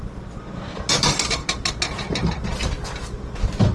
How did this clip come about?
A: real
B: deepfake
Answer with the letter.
A